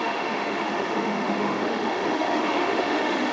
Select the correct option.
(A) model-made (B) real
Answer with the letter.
A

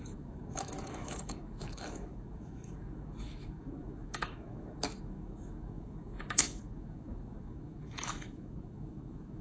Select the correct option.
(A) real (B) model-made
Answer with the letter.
B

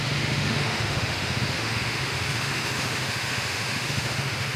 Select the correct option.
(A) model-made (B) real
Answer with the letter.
A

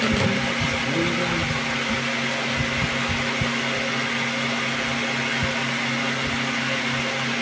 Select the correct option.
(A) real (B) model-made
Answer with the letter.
A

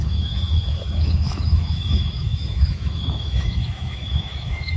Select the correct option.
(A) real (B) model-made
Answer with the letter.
B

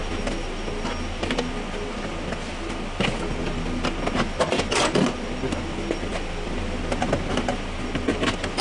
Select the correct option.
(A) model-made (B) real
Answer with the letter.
B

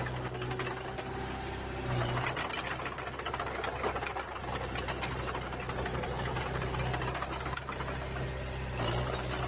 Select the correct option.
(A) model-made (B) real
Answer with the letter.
B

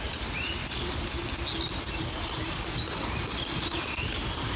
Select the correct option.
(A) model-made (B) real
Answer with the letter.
B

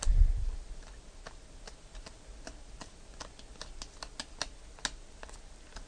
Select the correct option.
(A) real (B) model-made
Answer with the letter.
A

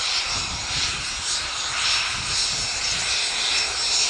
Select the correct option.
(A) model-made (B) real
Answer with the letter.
B